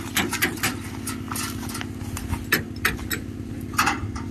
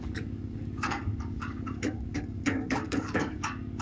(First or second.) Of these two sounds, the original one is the first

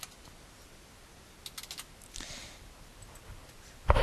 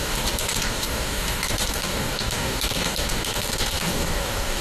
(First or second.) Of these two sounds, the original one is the first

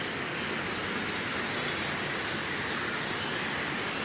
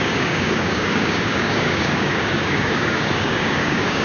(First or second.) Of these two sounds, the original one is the first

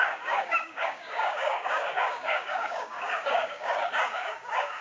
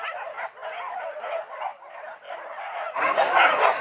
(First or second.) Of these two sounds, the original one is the second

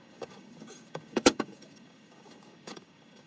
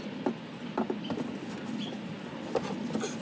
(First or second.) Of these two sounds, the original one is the second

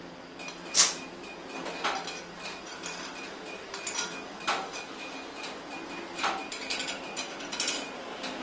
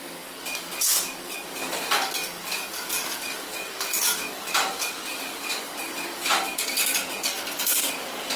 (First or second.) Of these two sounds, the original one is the first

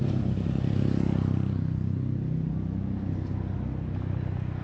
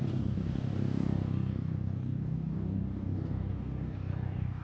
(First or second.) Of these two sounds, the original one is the first